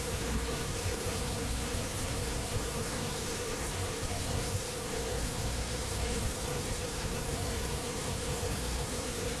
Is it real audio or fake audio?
fake